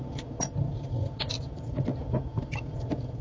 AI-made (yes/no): no